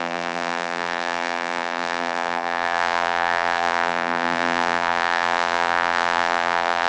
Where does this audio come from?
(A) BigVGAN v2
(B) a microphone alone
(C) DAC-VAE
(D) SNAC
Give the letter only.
A